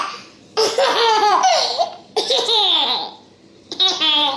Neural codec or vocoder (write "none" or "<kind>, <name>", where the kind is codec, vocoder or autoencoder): vocoder, BigVGAN v2